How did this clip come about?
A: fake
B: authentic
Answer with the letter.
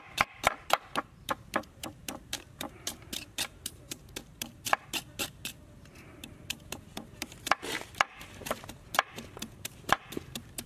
A